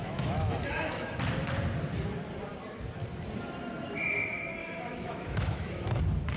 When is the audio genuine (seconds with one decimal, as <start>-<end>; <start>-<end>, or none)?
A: 1.2-4.6; 6.0-6.4